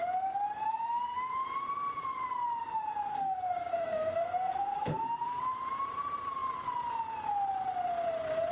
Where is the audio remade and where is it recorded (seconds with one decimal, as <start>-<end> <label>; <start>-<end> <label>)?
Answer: 0.0-0.7 recorded; 0.7-1.3 remade; 1.3-3.1 recorded; 3.1-5.4 remade; 5.4-8.5 recorded